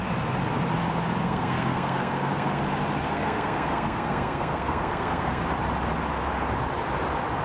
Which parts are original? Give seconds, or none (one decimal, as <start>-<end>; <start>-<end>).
0.0-1.2; 2.6-3.1; 5.4-7.4